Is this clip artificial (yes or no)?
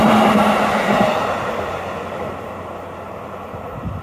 no